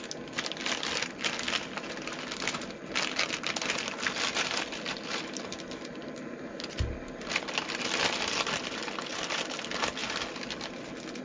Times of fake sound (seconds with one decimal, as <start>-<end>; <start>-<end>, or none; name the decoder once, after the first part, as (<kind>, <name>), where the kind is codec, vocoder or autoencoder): none